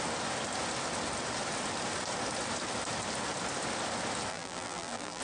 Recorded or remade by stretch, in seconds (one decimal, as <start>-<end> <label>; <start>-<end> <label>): 0.0-4.3 recorded; 4.3-5.2 remade